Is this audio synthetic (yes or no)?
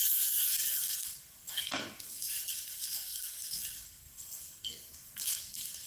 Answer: yes